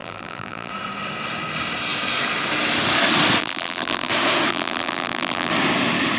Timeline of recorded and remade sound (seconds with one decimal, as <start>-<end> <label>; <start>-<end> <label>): 0.0-0.7 remade; 0.7-3.4 recorded; 3.4-4.1 remade; 4.1-4.5 recorded; 4.5-5.5 remade; 5.5-6.2 recorded